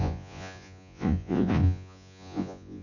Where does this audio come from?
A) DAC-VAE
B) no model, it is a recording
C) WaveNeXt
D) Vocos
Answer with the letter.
D